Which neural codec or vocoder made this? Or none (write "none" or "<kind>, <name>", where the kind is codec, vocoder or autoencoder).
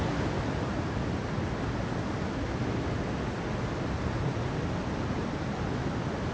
none